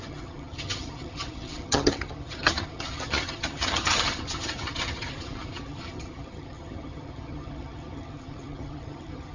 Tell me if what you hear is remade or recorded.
remade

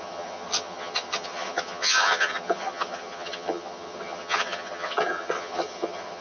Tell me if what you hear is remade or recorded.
remade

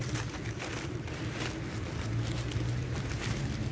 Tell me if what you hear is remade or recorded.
recorded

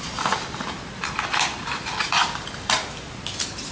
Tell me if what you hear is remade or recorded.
recorded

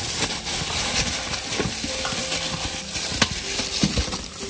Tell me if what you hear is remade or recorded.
recorded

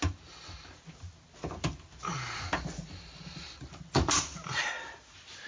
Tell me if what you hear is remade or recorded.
recorded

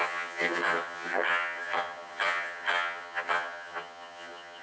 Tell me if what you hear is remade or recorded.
remade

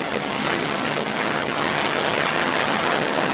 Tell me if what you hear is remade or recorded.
remade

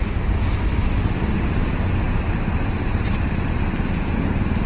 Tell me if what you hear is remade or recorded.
recorded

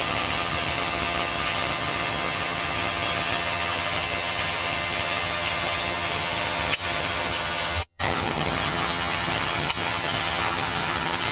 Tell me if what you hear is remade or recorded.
remade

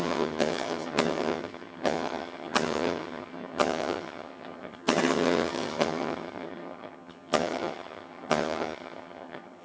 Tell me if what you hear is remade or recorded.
remade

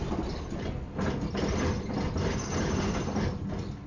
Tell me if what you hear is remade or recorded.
recorded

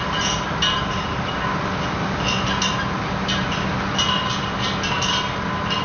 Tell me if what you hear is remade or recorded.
recorded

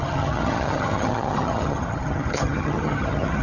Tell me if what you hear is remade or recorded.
remade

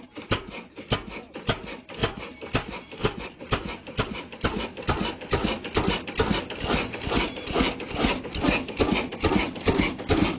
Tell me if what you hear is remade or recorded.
recorded